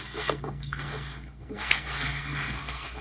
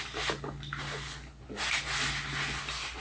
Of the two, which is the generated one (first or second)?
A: first